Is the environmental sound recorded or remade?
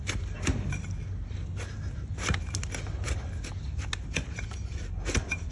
recorded